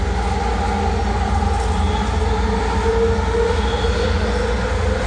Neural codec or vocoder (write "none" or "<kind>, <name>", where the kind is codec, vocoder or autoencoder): none